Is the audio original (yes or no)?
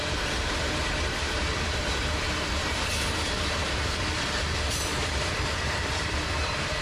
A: no